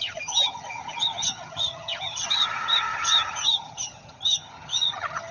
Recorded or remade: remade